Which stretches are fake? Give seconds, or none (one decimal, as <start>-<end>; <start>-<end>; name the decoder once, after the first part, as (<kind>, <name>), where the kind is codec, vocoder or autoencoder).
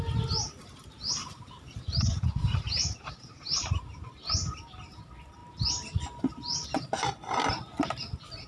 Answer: 0.6-3.7 (vocoder, BigVGAN v2)